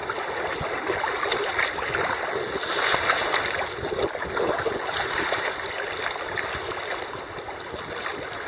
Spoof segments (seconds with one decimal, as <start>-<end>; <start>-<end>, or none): none